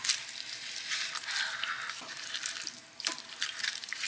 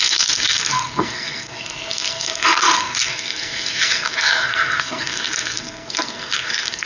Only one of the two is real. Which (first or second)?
first